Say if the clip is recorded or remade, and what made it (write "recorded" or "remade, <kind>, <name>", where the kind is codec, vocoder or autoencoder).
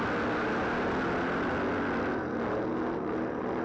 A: recorded